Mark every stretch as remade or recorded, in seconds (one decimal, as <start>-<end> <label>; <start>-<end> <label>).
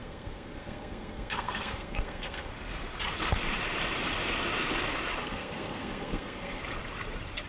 0.0-2.5 remade; 2.5-5.2 recorded; 5.2-6.6 remade; 6.6-7.5 recorded